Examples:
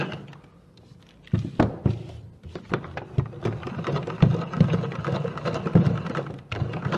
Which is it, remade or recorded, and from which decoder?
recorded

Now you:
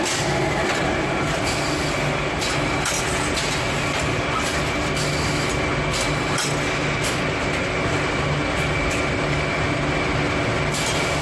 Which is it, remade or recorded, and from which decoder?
recorded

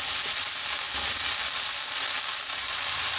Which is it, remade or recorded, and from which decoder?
recorded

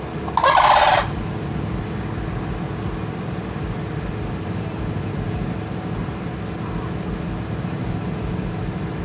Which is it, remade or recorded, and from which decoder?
recorded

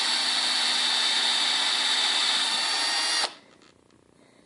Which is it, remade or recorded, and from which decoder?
recorded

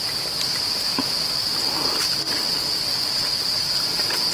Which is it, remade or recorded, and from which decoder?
recorded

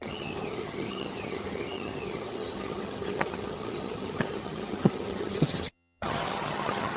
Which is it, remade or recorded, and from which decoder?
remade, vocoder, HiFi-GAN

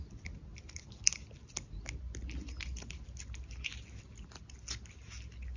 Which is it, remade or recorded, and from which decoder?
recorded